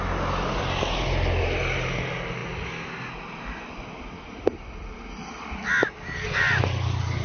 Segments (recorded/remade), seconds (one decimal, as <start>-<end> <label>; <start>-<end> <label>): 0.0-7.2 recorded